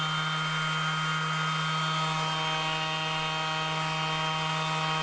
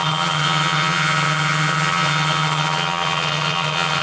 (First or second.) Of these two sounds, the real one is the first